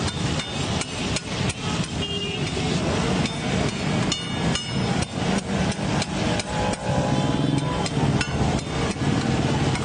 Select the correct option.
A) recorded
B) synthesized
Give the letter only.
A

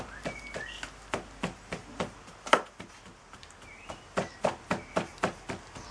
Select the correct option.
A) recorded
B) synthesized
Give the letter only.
A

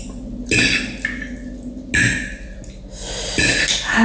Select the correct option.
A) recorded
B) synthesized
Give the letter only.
A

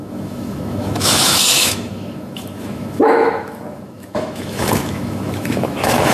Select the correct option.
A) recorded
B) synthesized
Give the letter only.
B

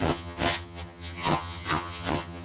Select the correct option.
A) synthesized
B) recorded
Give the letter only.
A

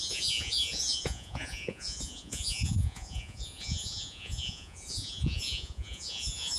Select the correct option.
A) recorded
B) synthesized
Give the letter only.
B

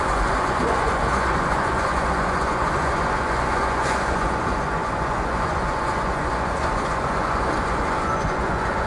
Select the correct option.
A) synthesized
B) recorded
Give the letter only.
A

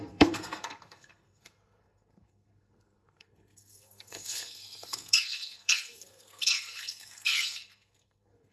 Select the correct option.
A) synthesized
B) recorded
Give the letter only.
A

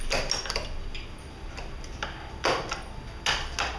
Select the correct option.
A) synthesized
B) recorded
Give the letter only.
B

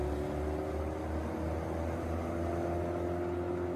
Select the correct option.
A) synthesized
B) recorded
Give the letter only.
B